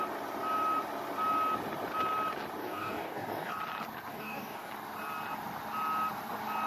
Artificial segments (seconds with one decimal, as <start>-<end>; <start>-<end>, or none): 2.6-3.5; 4.1-4.7